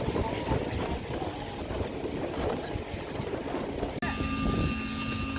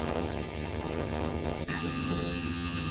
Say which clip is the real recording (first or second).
first